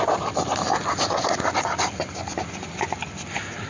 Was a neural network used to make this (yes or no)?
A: no